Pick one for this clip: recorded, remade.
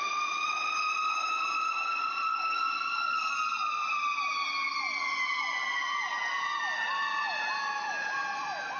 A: remade